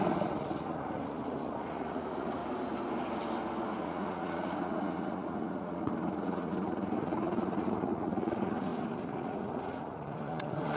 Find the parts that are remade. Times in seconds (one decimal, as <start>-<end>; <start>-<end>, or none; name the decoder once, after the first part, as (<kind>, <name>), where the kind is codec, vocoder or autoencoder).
0.0-2.4 (vocoder, Vocos); 3.8-10.8